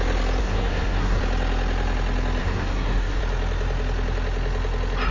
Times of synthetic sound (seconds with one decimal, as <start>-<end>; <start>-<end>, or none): 0.4-1.2; 2.4-3.2